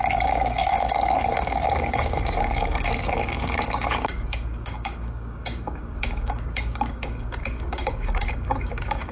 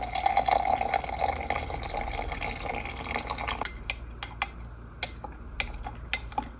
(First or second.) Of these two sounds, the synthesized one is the first